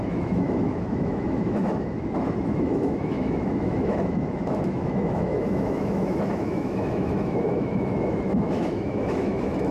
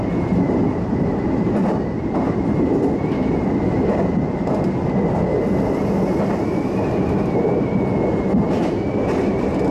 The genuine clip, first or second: second